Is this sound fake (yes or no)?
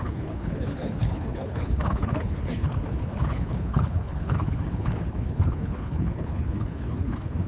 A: yes